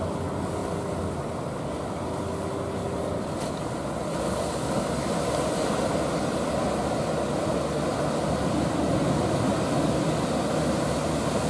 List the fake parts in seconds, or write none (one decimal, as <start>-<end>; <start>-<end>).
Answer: none